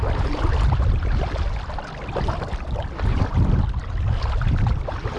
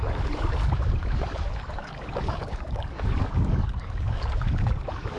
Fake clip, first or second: second